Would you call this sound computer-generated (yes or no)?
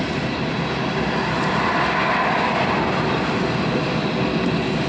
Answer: no